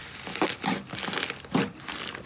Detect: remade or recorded recorded